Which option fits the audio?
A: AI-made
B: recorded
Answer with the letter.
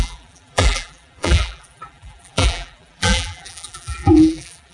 A